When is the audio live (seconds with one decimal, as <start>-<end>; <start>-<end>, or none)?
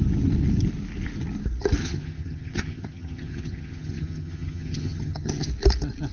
0.0-1.8; 5.5-6.1